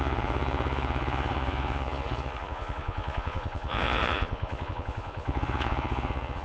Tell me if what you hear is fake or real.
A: fake